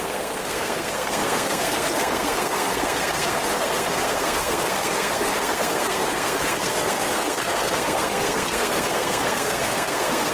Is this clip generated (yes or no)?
yes